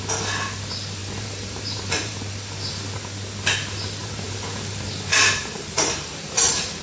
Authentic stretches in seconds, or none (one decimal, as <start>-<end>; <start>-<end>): 0.0-1.0; 2.7-4.0